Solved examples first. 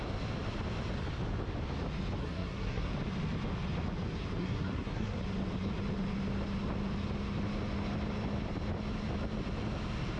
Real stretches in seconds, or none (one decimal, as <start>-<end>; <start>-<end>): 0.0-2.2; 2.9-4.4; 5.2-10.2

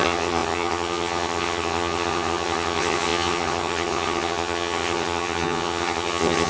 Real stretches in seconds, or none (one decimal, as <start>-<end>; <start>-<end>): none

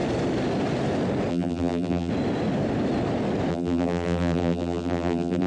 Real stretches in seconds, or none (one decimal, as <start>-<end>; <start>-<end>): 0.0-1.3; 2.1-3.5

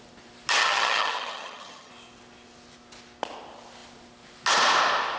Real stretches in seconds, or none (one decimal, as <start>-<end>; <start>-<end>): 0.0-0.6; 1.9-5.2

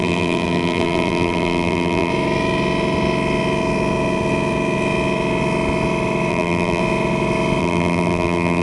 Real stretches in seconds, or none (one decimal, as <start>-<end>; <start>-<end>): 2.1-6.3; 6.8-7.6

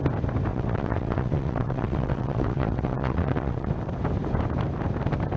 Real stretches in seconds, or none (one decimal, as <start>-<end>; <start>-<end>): 0.0-0.5; 3.7-5.4